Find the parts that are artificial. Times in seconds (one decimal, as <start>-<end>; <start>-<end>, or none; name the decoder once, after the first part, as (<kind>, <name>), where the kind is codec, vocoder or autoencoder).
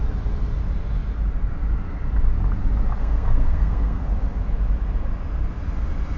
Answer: 3.0-4.0 (codec, SNAC)